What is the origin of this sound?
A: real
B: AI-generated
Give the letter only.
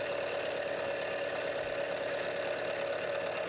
A